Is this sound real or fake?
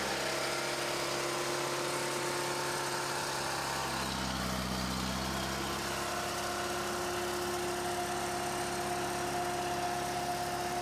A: real